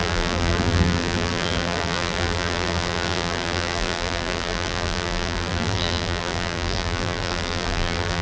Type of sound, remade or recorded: remade